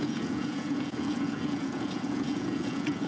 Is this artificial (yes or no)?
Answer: yes